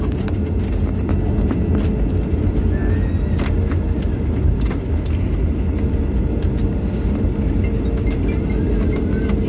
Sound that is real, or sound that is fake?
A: real